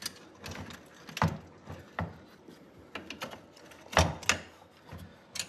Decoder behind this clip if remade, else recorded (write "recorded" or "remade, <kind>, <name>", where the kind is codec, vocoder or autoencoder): recorded